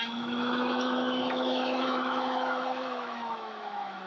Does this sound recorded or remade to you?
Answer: remade